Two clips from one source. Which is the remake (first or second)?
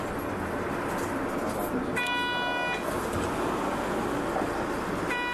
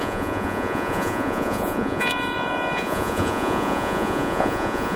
second